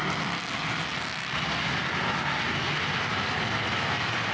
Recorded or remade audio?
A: recorded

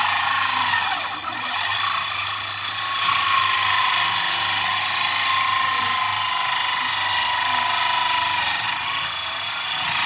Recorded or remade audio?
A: recorded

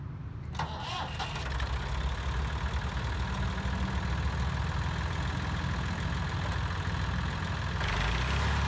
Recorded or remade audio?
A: recorded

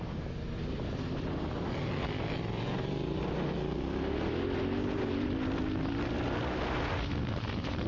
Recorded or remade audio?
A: recorded